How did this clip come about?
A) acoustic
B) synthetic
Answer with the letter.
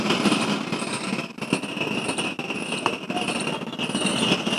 A